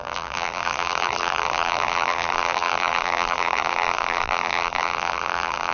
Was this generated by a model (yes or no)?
yes